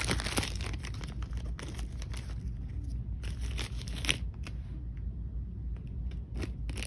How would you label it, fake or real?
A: real